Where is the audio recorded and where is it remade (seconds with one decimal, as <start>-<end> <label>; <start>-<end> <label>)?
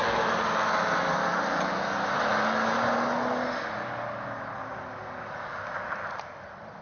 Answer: 0.0-6.8 recorded